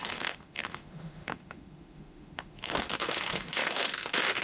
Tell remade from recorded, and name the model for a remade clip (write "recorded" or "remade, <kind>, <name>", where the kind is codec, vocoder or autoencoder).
remade, autoencoder, DAC-VAE